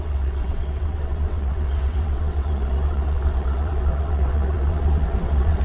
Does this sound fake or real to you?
fake